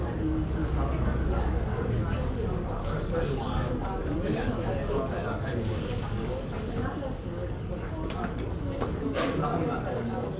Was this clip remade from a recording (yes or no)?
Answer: yes